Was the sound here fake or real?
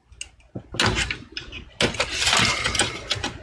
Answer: real